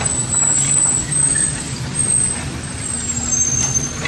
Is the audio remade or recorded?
recorded